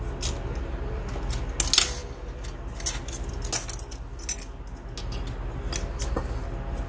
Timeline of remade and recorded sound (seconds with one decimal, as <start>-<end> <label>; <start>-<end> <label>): 0.0-6.9 recorded